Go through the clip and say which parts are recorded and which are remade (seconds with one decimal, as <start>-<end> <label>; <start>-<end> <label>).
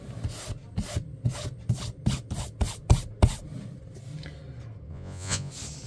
0.0-4.9 recorded; 4.9-5.5 remade; 5.5-5.9 recorded